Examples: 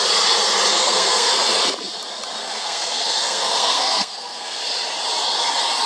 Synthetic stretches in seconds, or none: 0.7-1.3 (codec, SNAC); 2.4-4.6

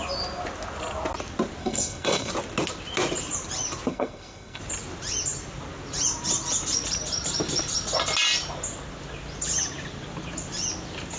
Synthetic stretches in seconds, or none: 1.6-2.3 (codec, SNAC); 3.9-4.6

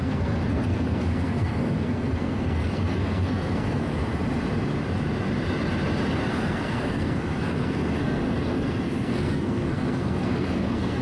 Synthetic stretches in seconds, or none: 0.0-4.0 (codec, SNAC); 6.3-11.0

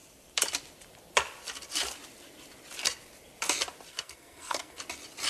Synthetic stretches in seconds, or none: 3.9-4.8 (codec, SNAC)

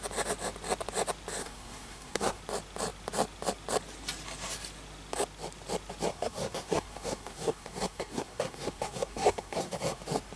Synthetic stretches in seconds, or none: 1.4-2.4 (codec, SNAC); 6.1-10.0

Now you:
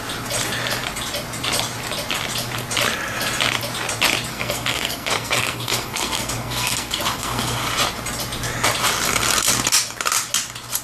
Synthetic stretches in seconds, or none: 4.3-7.7 (codec, SNAC)

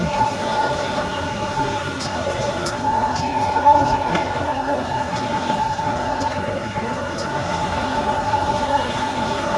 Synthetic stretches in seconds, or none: 0.0-9.6 (codec, SNAC)